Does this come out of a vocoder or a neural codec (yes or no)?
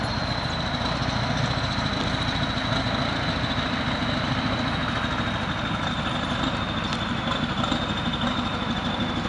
no